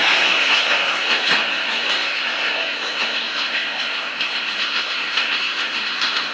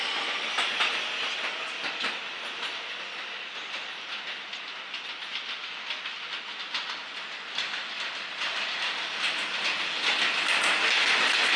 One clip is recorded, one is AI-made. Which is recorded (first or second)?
second